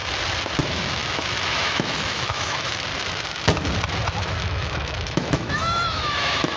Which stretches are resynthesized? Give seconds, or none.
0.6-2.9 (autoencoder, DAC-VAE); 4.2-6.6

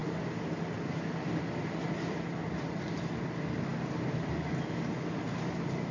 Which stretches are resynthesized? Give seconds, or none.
none

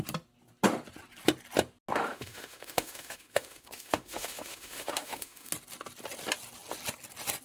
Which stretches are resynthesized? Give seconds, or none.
1.9-5.5 (autoencoder, DAC-VAE)

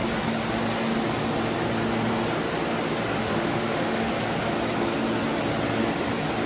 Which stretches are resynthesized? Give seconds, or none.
3.2-4.1 (autoencoder, DAC-VAE)

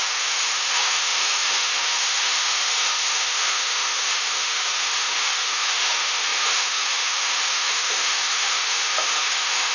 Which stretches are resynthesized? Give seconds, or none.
0.0-9.7 (autoencoder, DAC-VAE)

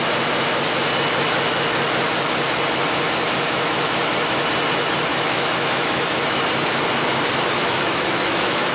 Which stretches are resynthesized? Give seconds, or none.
5.1-6.4 (autoencoder, DAC-VAE); 7.6-8.7

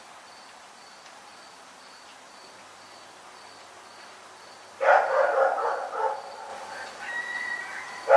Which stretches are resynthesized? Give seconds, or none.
none

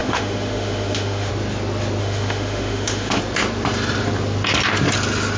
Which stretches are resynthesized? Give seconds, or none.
0.0-1.3 (autoencoder, DAC-VAE); 2.0-3.2